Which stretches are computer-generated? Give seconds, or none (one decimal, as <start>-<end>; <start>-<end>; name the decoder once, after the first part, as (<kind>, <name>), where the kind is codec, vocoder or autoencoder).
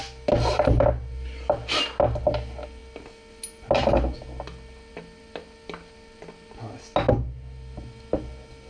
none